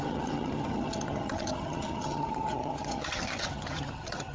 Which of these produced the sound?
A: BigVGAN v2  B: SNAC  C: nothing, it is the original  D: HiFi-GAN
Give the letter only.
D